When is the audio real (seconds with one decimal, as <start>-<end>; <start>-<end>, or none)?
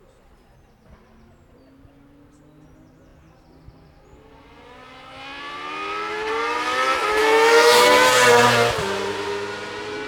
0.0-7.2; 7.9-10.1